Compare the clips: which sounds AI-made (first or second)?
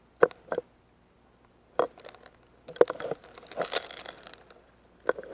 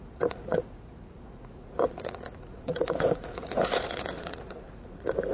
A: second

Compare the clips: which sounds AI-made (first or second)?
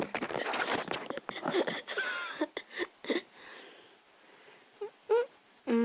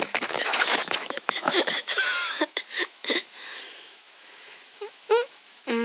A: second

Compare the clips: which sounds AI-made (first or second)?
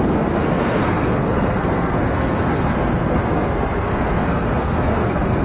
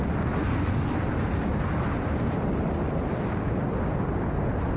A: first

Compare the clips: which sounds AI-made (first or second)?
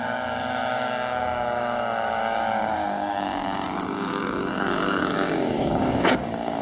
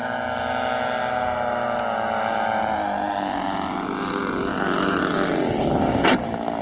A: first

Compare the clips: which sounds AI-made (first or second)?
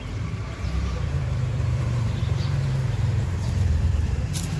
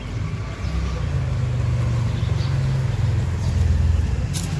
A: first